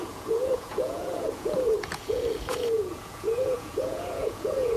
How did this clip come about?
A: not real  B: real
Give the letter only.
A